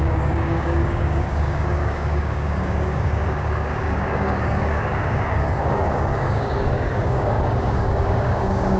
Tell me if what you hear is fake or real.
fake